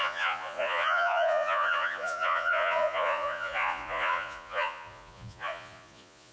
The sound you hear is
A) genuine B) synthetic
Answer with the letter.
B